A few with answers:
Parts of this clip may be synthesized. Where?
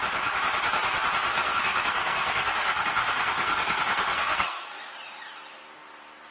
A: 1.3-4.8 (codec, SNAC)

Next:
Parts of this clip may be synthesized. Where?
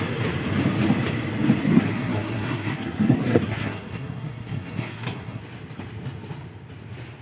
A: 1.6-5.4 (codec, SNAC)